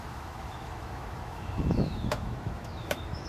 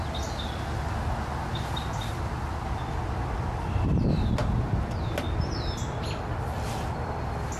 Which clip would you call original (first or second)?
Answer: second